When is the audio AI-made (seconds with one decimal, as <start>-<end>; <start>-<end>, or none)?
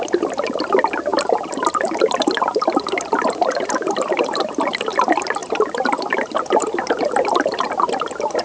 none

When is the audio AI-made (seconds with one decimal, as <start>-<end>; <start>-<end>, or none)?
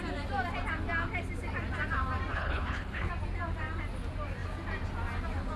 2.3-3.1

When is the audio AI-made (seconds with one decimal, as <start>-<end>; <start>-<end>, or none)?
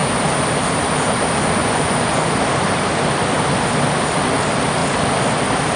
1.6-2.3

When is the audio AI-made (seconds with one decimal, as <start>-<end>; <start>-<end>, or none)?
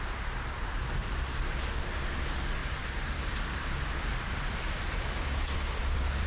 2.6-6.3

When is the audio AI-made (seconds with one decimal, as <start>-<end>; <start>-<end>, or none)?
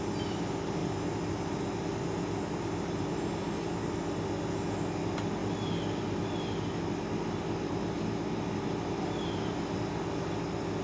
none